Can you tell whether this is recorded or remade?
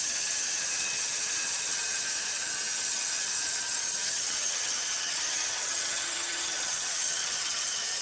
remade